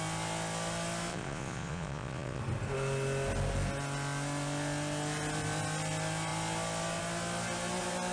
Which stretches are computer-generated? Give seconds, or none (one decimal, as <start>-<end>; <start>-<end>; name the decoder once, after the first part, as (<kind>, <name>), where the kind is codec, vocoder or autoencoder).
1.1-2.4 (vocoder, Vocos)